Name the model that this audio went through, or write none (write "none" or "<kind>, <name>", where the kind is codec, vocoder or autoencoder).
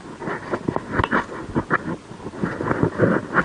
none